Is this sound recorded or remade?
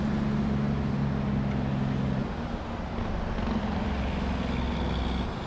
recorded